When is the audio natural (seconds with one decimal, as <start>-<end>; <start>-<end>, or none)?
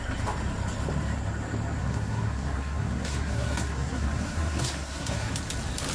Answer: 0.0-1.8; 5.3-5.9